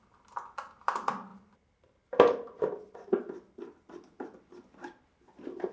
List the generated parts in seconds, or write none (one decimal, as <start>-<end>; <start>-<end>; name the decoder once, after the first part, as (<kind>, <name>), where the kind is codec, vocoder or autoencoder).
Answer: none